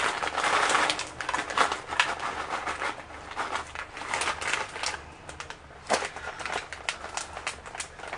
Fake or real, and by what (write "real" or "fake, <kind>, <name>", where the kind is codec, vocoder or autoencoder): real